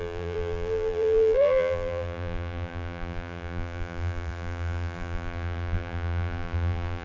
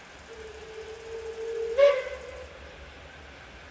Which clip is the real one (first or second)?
second